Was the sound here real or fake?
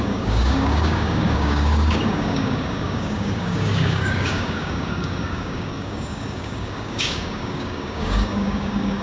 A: fake